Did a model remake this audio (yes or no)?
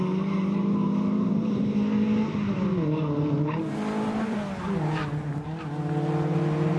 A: no